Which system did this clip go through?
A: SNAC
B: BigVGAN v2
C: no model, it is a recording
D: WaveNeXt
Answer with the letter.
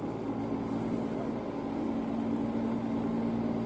C